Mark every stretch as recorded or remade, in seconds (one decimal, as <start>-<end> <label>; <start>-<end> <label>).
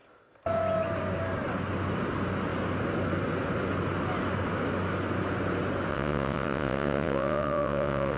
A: 0.0-5.9 recorded; 5.9-8.2 remade